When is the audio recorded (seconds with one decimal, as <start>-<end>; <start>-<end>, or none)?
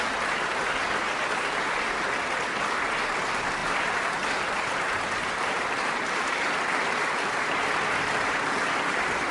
0.0-9.3